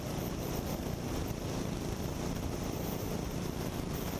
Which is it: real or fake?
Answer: fake